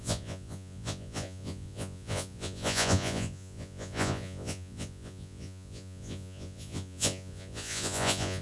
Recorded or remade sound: remade